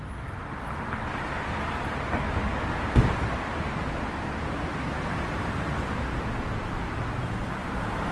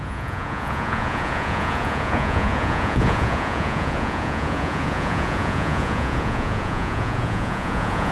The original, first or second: first